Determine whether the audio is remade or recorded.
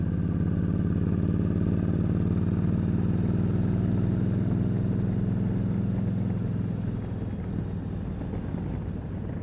recorded